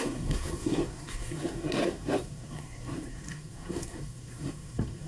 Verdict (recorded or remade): remade